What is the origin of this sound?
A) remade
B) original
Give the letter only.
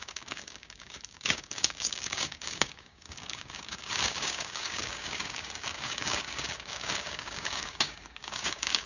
A